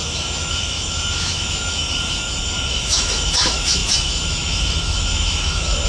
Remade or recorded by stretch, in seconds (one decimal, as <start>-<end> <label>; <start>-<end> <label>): 0.0-1.8 remade; 1.8-2.7 recorded; 2.7-5.9 remade